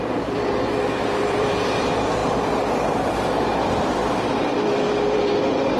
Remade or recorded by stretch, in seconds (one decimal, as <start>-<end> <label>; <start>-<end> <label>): 0.0-5.8 remade

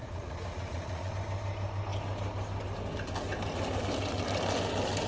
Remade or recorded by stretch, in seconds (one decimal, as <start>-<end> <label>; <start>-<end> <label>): 0.0-1.1 remade; 1.1-5.1 recorded

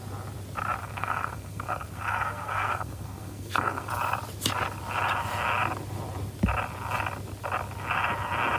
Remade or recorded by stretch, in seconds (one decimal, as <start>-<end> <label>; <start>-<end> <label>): 0.0-0.8 recorded; 0.8-3.9 remade; 3.9-8.6 recorded

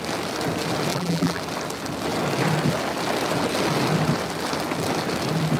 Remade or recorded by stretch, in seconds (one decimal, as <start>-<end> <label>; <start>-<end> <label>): 0.0-0.9 recorded; 0.9-1.4 remade; 1.4-5.6 recorded

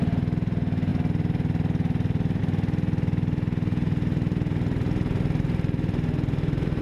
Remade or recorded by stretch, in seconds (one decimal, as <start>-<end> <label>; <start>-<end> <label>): 0.0-6.8 recorded

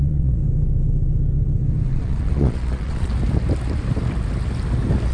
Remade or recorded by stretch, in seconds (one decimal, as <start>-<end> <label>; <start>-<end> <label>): 0.0-0.4 remade; 0.4-1.9 recorded; 1.9-3.1 remade; 3.1-5.1 recorded